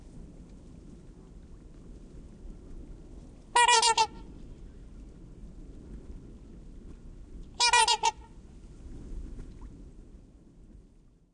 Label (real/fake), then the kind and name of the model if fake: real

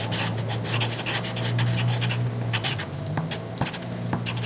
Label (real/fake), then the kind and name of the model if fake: real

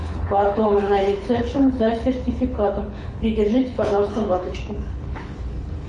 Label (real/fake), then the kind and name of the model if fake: fake, codec, HILCodec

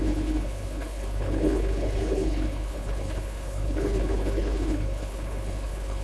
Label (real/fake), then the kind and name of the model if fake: fake, codec, HILCodec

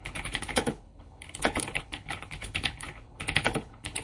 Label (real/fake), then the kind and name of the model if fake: fake, codec, HILCodec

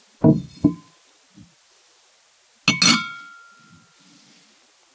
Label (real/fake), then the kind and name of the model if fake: real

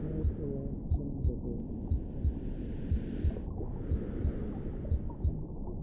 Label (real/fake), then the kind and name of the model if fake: real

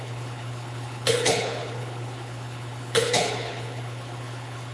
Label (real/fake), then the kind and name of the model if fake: fake, codec, HILCodec